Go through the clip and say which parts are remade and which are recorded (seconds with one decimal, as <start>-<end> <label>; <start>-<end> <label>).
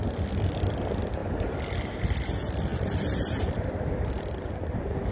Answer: 0.0-5.1 recorded